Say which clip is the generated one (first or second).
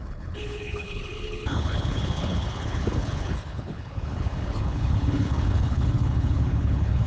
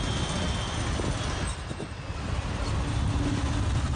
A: first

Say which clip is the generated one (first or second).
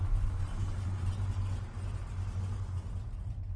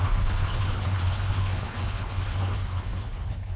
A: second